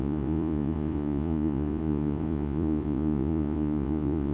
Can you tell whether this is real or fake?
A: fake